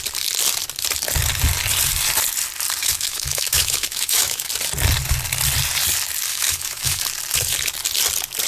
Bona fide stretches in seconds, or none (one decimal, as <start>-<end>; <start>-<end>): 0.0-2.8; 4.5-6.3; 7.0-8.5